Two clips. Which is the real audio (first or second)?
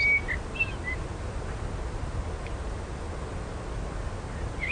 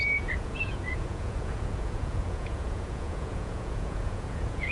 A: first